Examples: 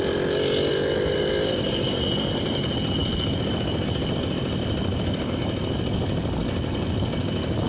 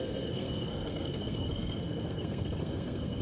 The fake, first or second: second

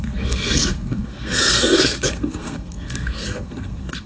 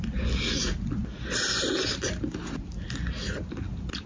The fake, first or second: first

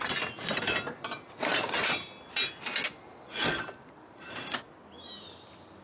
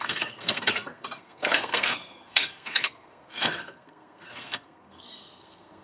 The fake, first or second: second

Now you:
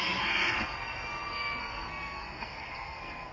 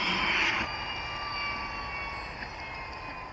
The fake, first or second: first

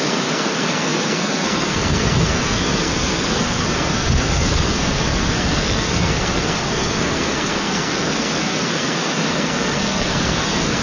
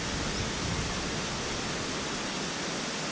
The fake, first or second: first